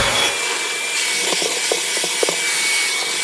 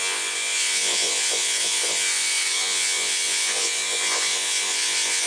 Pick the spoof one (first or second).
second